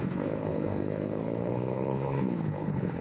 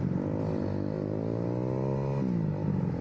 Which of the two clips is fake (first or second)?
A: first